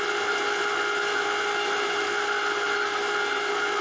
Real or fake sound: real